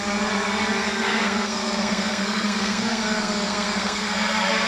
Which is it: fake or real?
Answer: fake